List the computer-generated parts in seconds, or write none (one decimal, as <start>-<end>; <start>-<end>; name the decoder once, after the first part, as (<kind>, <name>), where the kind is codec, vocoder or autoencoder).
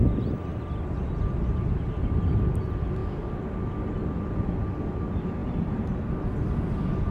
5.4-6.0 (vocoder, BigVGAN v2)